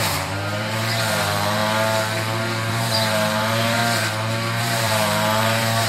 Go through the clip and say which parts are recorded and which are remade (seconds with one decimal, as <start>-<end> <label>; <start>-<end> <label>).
0.0-1.6 remade; 1.6-2.7 recorded; 2.7-3.8 remade; 3.8-4.6 recorded; 4.6-5.9 remade